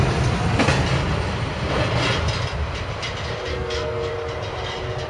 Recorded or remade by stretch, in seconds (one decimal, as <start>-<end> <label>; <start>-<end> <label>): 0.0-3.5 recorded; 3.5-4.1 remade; 4.1-5.1 recorded